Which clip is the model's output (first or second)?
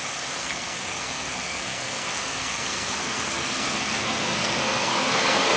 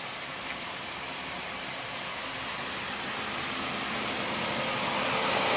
first